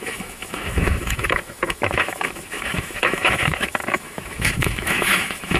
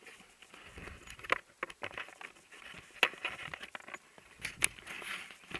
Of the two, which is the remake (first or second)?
first